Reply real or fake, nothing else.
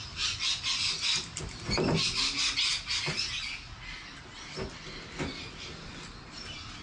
real